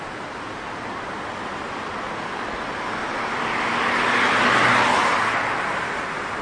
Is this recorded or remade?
recorded